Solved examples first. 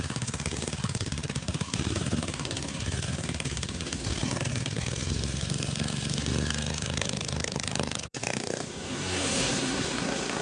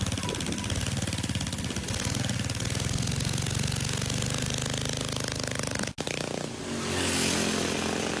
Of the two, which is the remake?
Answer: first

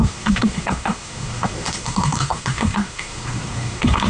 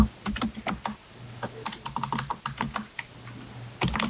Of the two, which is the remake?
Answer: first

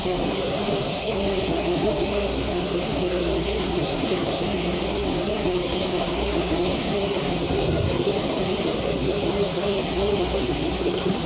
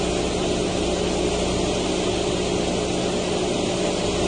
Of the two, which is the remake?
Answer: first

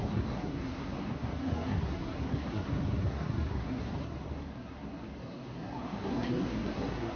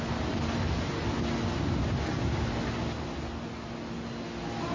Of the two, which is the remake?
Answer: first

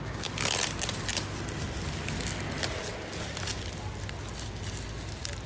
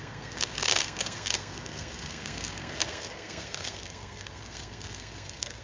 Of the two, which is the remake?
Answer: second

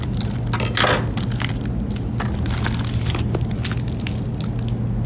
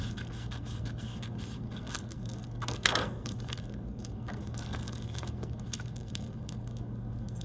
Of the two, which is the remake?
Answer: second